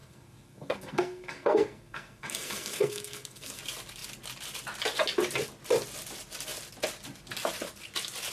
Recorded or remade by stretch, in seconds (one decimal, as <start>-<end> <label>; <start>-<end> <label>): 0.0-3.6 remade; 3.6-8.3 recorded